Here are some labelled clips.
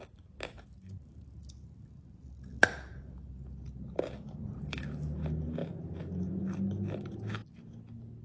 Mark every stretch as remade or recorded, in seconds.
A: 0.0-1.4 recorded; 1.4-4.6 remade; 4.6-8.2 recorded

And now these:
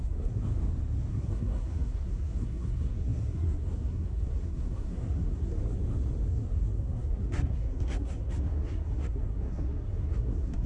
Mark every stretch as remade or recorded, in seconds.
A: 0.0-0.4 remade; 0.4-1.1 recorded; 1.1-5.6 remade; 5.6-6.3 recorded; 6.3-10.7 remade